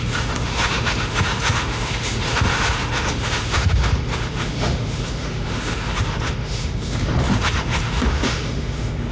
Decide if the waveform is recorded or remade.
remade